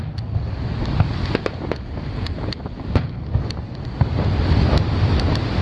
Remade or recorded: recorded